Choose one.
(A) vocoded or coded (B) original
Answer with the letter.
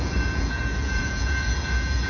A